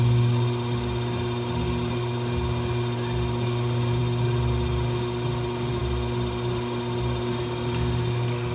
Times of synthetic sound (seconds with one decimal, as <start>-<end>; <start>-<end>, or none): none